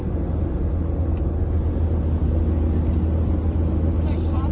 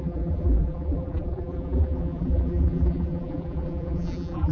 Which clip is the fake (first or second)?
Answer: second